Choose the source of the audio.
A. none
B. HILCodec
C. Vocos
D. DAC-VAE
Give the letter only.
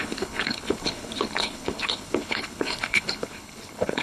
B